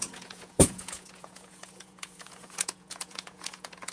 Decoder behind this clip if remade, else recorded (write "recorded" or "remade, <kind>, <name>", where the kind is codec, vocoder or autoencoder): remade, vocoder, Vocos